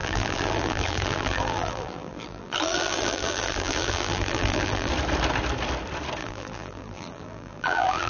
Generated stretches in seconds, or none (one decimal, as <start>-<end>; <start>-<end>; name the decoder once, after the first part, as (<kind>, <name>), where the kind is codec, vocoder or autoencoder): 0.0-4.9 (vocoder, BigVGAN v2); 6.2-8.1